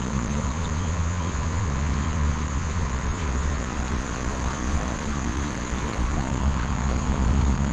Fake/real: fake